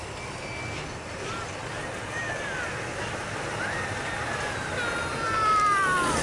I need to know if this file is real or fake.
real